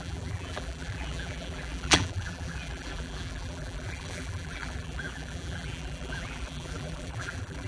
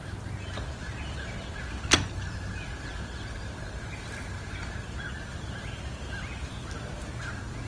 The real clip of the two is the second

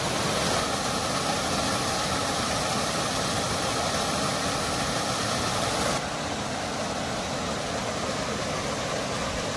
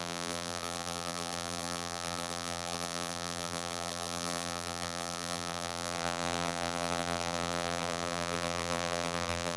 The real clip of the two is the first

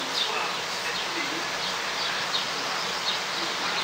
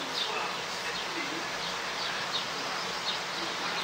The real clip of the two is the second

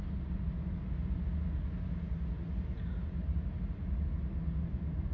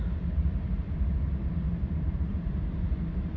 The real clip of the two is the first